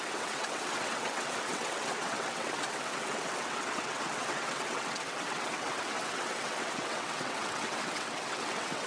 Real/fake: fake